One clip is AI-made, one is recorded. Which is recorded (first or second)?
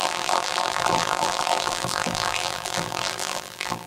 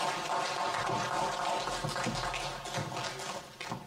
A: second